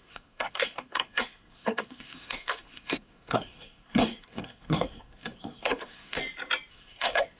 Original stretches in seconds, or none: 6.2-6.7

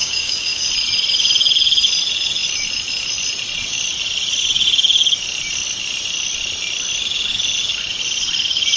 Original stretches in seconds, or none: 0.7-8.8

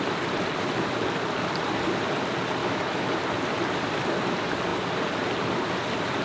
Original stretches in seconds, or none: 0.0-2.6; 3.1-6.2

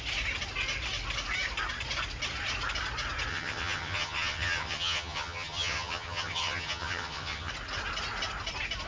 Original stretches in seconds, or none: 0.0-3.3; 7.5-8.9

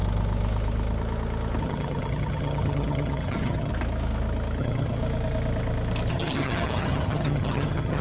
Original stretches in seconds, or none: 0.0-1.6; 3.7-4.6; 5.0-6.1

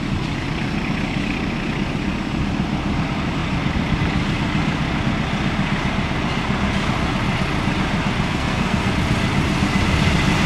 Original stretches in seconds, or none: 0.0-8.3; 8.9-10.5

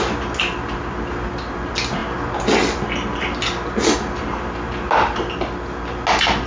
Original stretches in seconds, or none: 0.0-6.5